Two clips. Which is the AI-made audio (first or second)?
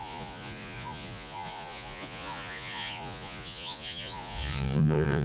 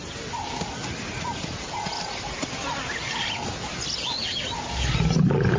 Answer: first